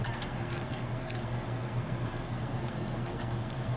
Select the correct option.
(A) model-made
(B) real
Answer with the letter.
A